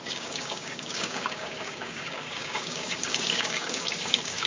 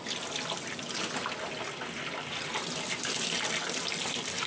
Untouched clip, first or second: second